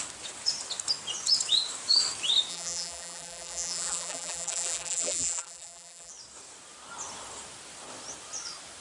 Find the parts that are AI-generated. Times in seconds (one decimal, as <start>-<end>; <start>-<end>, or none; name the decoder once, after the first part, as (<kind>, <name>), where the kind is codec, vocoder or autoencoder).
2.5-6.1 (vocoder, BigVGAN v2)